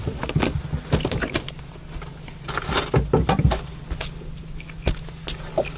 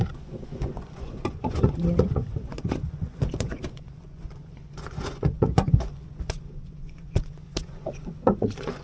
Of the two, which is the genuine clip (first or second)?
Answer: first